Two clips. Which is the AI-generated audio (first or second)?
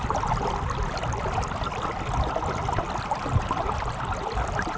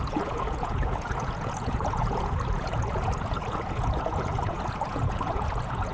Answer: second